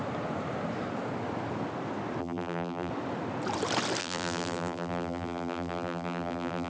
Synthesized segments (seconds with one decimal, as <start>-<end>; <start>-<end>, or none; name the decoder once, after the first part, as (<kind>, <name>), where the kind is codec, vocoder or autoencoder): 2.2-2.9 (vocoder, BigVGAN v2); 4.0-6.7